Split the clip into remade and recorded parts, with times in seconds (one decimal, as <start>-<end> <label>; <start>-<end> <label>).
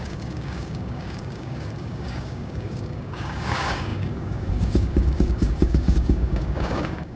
0.0-7.2 remade